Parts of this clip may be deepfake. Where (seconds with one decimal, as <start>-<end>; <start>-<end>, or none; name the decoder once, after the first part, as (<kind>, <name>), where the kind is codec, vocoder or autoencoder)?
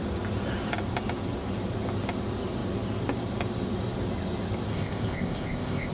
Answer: 4.7-5.9 (codec, ZipCodec)